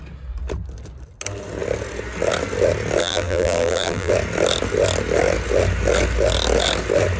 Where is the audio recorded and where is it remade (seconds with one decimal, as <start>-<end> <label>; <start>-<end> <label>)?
0.0-3.0 recorded; 3.0-4.1 remade; 4.1-7.2 recorded